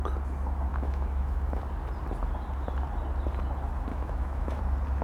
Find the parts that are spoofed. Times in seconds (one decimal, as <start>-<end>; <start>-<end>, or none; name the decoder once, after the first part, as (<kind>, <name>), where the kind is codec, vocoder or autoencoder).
0.7-1.6 (autoencoder, DAC-VAE); 3.9-4.6

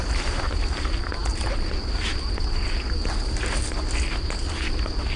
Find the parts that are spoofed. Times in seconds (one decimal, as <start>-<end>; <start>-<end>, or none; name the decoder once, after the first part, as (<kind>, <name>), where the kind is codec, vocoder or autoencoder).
none

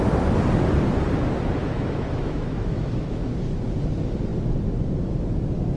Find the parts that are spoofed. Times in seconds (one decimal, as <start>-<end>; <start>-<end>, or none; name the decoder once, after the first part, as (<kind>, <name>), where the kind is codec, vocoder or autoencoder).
1.6-3.3 (autoencoder, DAC-VAE)

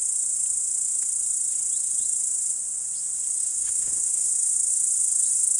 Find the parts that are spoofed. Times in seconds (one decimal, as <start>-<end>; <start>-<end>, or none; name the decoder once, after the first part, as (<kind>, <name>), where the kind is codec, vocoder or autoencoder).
3.4-4.3 (autoencoder, DAC-VAE)